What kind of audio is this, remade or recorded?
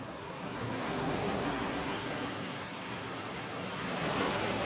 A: remade